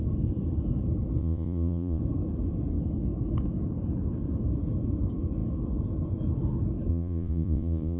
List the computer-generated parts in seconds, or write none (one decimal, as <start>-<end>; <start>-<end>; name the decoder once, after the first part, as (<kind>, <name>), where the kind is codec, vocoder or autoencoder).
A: 1.2-2.0 (vocoder, Vocos); 6.9-8.0